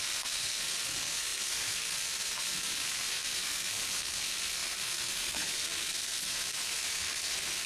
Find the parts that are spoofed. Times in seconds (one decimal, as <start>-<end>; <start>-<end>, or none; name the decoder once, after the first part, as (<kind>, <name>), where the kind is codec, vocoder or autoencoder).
0.0-7.7 (codec, SNAC)